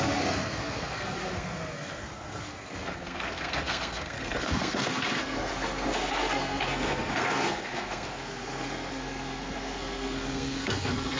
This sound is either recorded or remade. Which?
remade